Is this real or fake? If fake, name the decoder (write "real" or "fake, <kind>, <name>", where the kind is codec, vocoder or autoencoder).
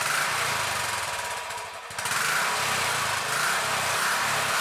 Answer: real